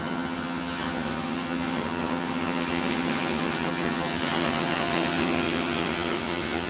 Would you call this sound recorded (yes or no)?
no